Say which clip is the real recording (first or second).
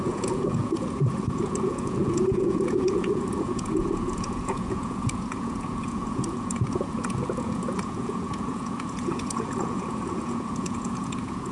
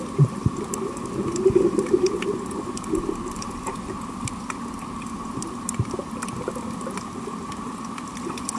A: second